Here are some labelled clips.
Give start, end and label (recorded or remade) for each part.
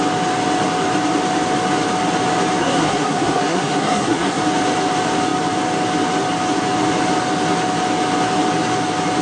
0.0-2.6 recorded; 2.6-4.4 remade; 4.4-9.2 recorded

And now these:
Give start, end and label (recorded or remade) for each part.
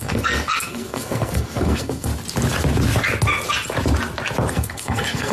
0.0-2.1 remade; 2.1-4.5 recorded; 4.5-5.3 remade